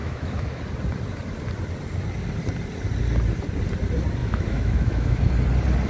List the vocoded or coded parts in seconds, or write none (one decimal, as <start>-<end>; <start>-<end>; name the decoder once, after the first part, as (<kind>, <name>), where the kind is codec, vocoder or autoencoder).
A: 0.0-0.6 (autoencoder, DAC-VAE); 4.2-5.3